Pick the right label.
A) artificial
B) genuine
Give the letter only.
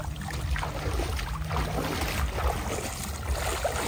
B